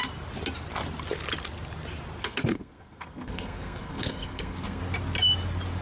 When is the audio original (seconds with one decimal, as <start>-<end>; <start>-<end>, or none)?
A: 0.0-2.2; 4.8-5.8